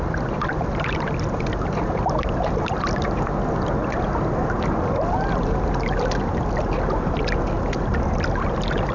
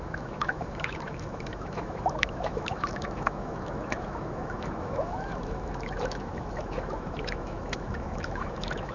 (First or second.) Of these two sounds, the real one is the first